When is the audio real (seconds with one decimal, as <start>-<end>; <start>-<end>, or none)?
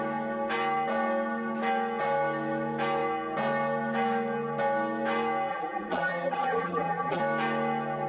0.0-5.5; 7.2-8.1